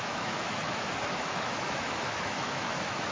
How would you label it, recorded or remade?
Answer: remade